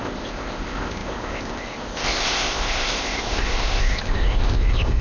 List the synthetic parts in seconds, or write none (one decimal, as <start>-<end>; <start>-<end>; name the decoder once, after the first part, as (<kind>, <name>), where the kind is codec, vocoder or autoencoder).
0.0-5.0 (codec, ZipCodec)